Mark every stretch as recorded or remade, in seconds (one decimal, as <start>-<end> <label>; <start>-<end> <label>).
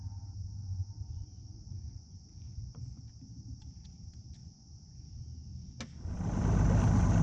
0.0-0.6 recorded; 0.6-3.0 remade; 3.0-4.4 recorded; 4.4-5.1 remade; 5.1-7.2 recorded